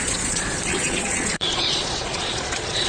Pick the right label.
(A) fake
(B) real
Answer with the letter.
A